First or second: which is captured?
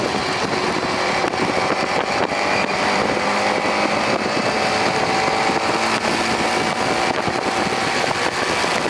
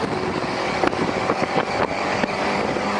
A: first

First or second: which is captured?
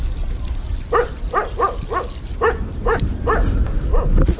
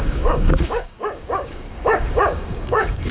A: first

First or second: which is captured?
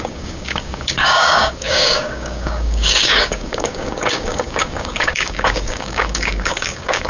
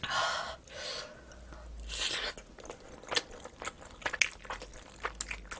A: second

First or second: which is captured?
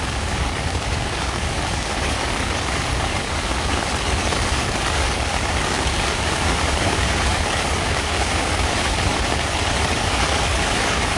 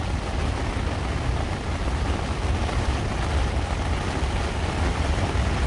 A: second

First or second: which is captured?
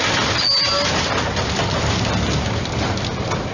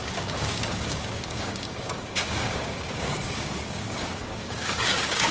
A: first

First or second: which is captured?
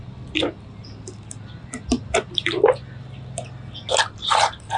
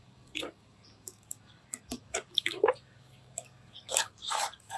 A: first